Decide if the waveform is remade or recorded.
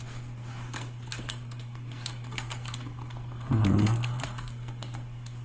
remade